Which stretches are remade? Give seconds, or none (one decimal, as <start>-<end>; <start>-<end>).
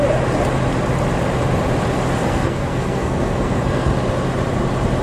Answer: 2.2-3.9